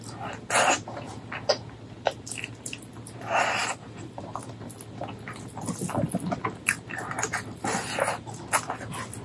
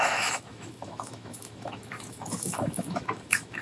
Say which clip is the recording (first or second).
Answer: first